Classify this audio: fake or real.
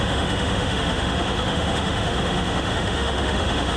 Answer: fake